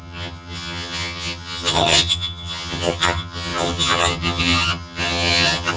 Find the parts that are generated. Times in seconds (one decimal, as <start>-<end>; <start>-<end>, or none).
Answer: 0.0-5.8